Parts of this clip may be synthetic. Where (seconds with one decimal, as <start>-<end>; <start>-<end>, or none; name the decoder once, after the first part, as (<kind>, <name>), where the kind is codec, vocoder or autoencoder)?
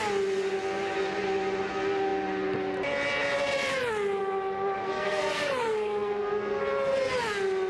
4.8-6.6 (codec, SNAC)